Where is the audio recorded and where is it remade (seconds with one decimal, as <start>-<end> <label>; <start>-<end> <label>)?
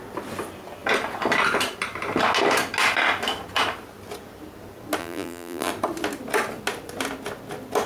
0.0-5.0 recorded; 5.0-5.7 remade; 5.7-7.9 recorded